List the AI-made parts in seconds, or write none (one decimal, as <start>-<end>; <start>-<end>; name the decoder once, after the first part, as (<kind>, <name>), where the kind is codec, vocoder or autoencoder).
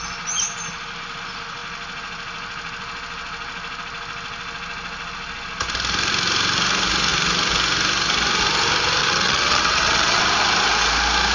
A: 9.0-10.2 (vocoder, WaveNeXt)